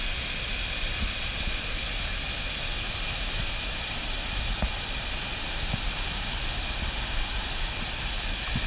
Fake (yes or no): no